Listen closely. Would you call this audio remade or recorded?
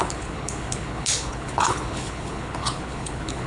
remade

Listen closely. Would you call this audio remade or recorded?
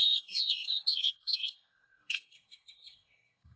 remade